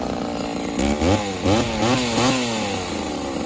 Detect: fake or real real